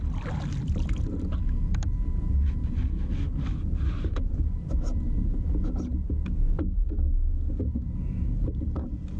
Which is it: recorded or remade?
recorded